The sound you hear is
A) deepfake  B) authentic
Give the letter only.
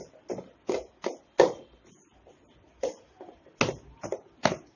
B